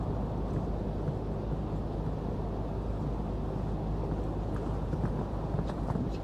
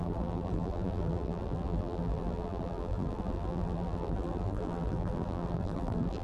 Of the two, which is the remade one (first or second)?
second